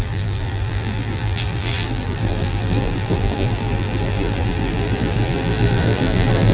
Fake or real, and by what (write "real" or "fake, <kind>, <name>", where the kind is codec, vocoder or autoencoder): fake, vocoder, BigVGAN v2